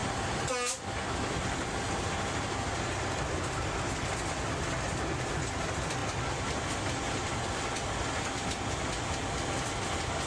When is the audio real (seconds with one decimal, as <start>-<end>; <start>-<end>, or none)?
0.0-10.3